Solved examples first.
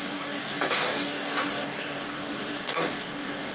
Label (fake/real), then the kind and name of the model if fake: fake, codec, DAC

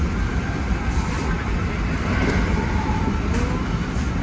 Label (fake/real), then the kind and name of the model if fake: real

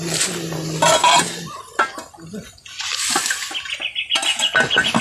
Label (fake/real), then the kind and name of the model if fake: real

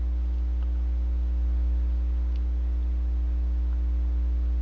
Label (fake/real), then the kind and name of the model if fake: real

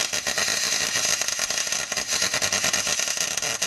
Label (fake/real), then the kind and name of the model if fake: real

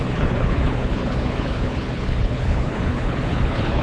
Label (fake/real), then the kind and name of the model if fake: fake, codec, HILCodec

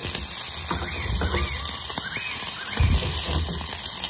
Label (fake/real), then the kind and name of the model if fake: real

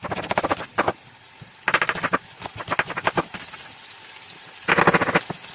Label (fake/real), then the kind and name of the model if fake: real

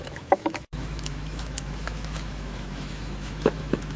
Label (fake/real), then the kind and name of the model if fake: fake, autoencoder, DAC-VAE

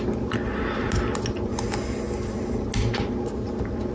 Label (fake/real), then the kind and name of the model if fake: real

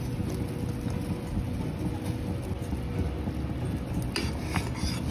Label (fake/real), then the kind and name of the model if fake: real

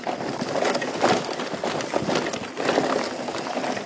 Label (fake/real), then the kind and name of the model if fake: real